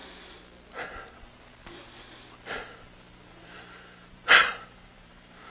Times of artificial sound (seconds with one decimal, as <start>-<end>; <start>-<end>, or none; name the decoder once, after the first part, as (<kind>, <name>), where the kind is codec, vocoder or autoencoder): 3.3-5.5 (vocoder, BigVGAN v2)